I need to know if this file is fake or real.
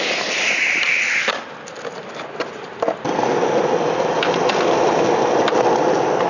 real